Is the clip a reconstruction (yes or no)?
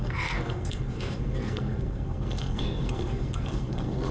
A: yes